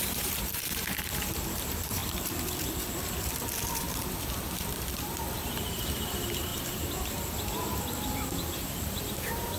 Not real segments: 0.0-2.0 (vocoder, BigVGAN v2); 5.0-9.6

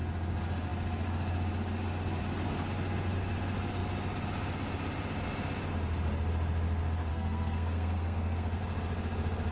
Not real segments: 7.1-8.6 (codec, SNAC)

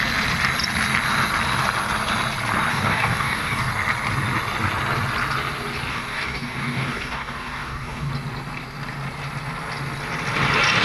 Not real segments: 2.7-3.7 (codec, DAC); 5.9-8.1

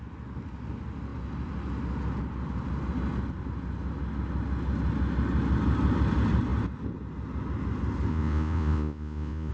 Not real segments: 8.1-9.5 (vocoder, Vocos)

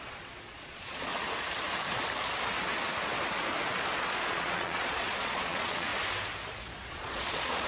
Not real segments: 0.0-1.1 (vocoder, Vocos); 4.0-5.9; 6.9-7.7

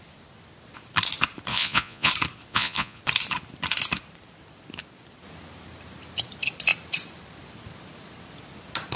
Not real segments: 1.5-2.1 (vocoder, Vocos); 2.5-3.0